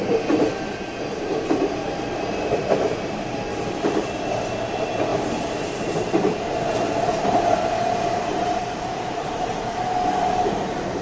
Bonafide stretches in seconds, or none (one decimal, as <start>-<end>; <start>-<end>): none